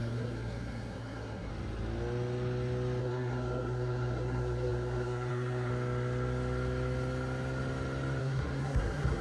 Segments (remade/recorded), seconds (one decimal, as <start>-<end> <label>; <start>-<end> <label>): 0.0-1.5 remade; 1.5-3.0 recorded; 3.0-5.7 remade; 5.7-8.2 recorded; 8.2-9.2 remade